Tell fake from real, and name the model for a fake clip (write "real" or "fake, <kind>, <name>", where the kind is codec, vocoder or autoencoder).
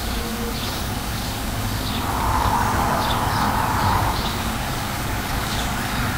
fake, codec, DAC